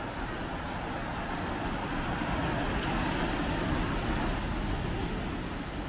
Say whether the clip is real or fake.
real